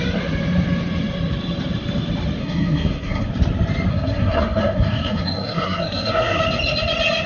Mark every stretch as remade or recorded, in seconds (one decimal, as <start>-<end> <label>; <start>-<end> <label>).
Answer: 0.0-2.4 recorded; 2.4-3.3 remade; 3.3-3.9 recorded; 3.9-6.4 remade; 6.4-7.3 recorded